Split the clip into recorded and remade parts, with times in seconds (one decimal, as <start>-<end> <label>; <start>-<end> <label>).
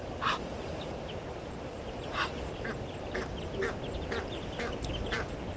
0.0-5.6 recorded